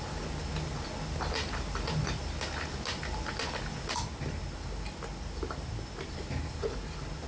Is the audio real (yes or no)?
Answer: yes